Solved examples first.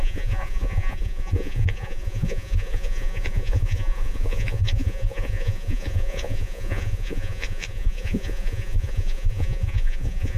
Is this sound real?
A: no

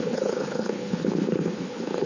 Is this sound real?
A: no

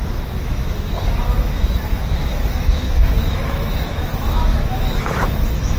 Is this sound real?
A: no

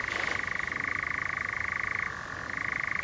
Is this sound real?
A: yes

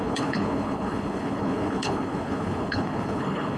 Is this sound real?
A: no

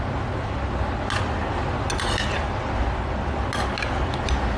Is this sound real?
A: yes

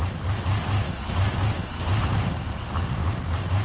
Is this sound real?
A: no